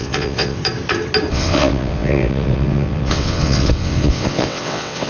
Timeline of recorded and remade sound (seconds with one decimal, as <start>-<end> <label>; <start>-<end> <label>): 0.0-0.6 remade; 0.6-1.3 recorded; 1.3-5.1 remade